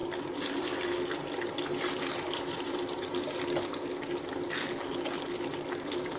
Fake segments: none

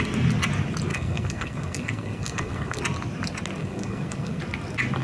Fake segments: 0.9-2.8 (codec, SNAC); 3.6-4.4